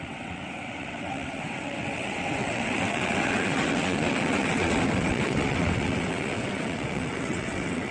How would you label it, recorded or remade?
remade